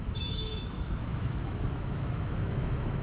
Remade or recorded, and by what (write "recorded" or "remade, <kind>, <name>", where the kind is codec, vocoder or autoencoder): remade, autoencoder, DAC-VAE